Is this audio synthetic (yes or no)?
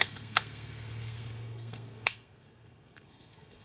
yes